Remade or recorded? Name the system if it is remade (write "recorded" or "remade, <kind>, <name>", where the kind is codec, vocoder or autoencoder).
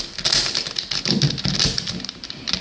recorded